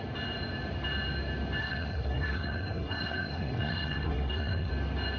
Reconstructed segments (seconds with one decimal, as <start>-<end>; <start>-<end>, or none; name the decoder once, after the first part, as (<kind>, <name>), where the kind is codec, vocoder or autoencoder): 1.6-4.7 (codec, SNAC)